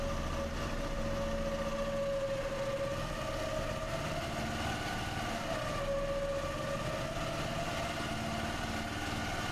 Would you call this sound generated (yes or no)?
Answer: no